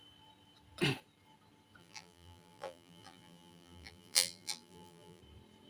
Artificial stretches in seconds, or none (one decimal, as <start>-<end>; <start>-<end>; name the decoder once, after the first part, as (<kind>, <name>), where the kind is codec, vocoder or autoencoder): 1.8-5.2 (vocoder, BigVGAN v2)